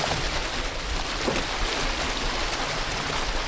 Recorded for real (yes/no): yes